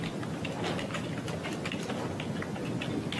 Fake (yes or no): no